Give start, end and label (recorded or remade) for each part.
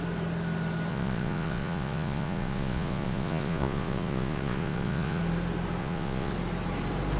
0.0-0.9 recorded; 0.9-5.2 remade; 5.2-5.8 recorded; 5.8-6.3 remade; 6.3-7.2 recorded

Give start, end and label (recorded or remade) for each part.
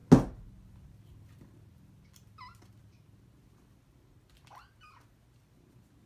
0.0-6.1 recorded